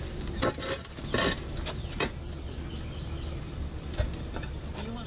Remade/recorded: recorded